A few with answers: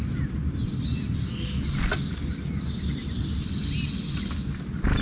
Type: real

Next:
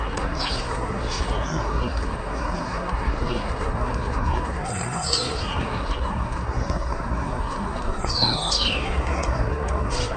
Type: fake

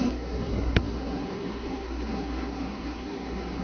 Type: fake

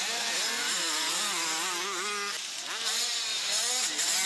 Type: real